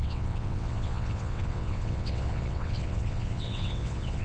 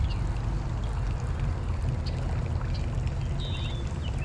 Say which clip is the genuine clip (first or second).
second